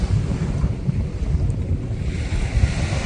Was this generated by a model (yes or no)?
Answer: no